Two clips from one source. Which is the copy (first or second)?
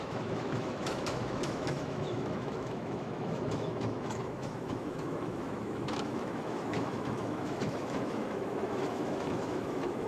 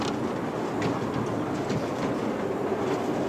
first